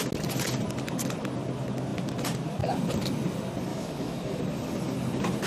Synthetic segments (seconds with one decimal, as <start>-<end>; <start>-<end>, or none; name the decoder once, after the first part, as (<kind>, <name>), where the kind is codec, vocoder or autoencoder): 3.7-4.4 (autoencoder, DAC-VAE)